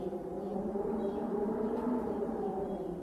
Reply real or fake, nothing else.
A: fake